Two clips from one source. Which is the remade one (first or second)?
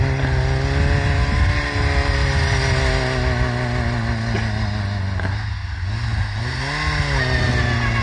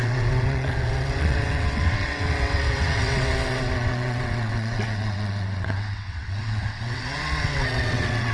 second